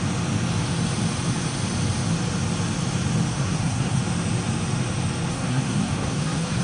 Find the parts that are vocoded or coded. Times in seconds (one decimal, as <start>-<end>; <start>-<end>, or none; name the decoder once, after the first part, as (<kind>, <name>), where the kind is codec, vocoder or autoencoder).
3.3-4.0 (codec, SNAC); 5.3-6.6